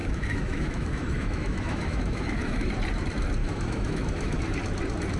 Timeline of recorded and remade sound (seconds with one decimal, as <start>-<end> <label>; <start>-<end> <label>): 0.0-2.7 remade; 2.7-3.4 recorded; 3.4-4.4 remade; 4.4-5.2 recorded